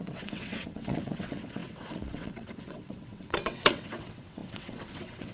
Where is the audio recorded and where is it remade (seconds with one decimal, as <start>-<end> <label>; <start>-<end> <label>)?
0.0-5.3 remade